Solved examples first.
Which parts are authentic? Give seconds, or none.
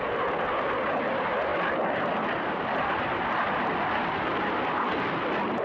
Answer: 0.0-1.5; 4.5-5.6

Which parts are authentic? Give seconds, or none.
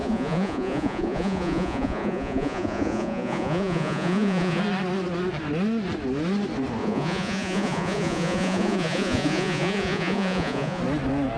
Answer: 4.6-6.8; 10.8-11.4